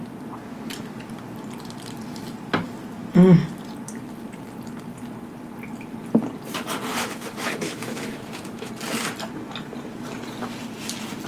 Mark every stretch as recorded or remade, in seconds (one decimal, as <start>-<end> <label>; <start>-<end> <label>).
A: 0.0-6.9 recorded; 6.9-8.7 remade; 8.7-11.3 recorded